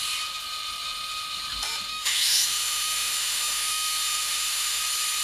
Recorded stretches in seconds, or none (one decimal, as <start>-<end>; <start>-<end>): 0.0-1.9; 4.8-5.2